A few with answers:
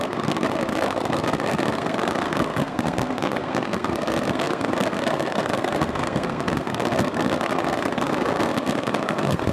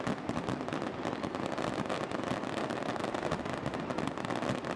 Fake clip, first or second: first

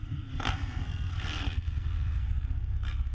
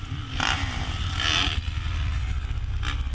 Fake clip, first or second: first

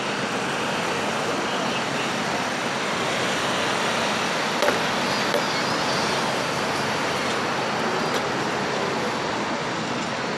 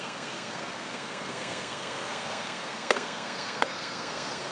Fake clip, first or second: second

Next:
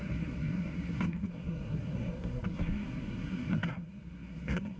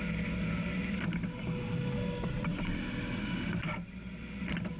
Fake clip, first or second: first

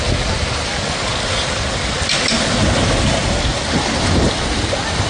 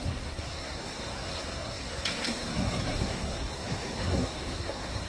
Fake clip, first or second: second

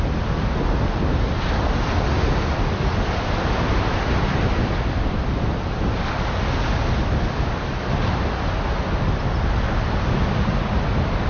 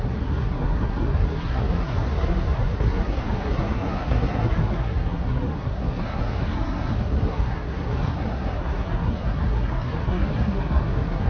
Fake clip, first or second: second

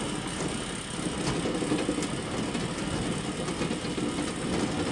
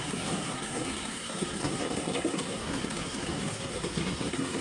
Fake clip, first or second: second